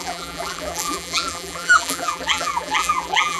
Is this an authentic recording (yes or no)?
no